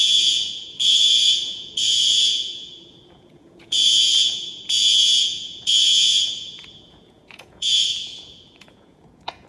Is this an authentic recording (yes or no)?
no